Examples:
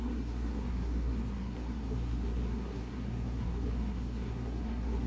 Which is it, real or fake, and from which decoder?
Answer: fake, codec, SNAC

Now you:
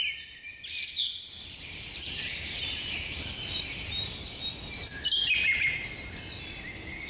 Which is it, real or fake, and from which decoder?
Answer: real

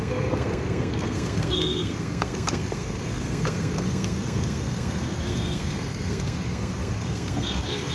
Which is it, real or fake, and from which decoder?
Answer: fake, codec, SNAC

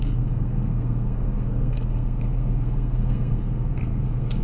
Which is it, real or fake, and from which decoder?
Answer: fake, codec, SNAC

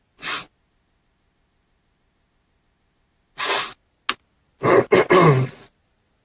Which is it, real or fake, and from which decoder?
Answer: real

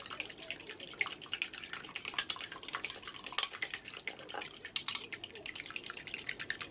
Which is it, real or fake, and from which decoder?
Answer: real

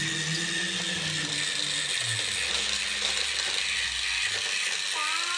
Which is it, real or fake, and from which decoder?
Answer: real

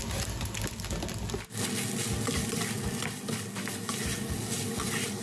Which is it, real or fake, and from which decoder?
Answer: real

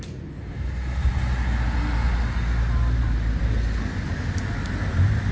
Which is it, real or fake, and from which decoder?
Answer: real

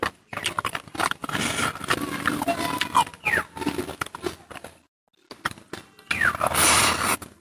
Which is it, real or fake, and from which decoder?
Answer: real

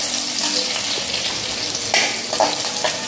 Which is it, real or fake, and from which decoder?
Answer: real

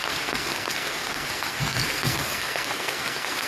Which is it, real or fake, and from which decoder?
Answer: fake, codec, SNAC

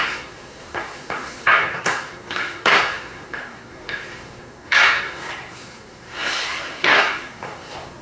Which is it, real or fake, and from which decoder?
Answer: fake, codec, SNAC